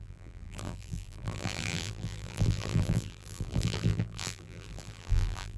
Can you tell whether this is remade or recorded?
remade